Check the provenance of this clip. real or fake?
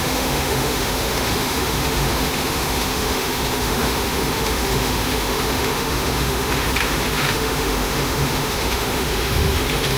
fake